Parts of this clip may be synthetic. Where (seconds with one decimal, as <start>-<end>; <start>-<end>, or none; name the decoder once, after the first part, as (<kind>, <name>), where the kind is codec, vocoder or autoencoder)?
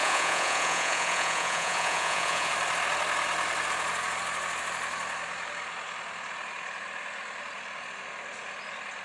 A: 0.0-2.5 (vocoder, Vocos)